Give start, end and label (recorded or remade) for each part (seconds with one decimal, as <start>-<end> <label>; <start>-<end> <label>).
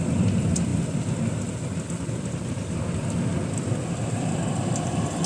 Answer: 0.0-5.3 recorded